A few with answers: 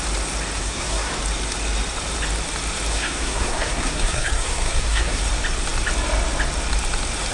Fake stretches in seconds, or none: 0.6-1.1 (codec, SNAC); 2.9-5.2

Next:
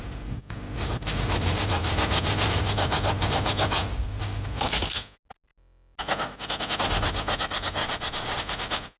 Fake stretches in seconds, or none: 7.8-8.4 (vocoder, Vocos)

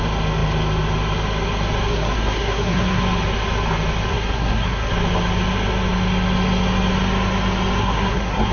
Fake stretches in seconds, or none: 1.9-3.0 (codec, SNAC); 4.1-4.9; 7.8-8.5